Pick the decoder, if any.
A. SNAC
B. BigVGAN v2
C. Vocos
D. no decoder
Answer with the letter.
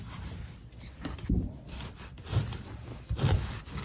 D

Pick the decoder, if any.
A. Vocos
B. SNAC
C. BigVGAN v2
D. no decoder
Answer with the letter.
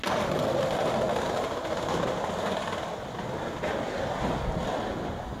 D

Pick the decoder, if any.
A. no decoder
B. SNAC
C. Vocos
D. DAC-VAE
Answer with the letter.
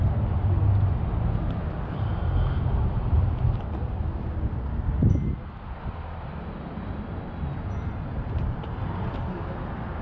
A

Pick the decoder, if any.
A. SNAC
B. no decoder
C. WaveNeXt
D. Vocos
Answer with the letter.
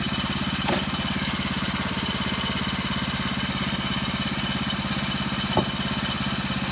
B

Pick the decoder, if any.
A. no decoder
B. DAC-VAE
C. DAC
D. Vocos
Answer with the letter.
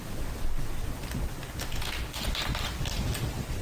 A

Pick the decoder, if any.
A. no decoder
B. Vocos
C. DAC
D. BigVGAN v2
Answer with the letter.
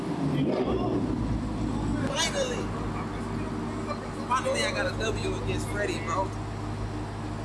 A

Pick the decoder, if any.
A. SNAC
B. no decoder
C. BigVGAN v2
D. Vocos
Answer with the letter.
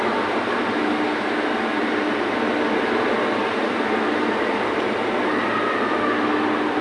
B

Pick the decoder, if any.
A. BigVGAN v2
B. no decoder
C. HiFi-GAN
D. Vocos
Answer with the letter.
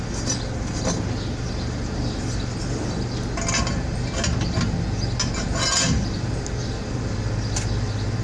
B